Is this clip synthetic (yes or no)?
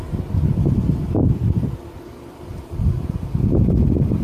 no